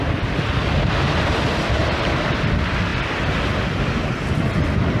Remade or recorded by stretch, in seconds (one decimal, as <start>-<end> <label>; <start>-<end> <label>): 0.0-1.8 recorded; 1.8-2.5 remade; 2.5-5.0 recorded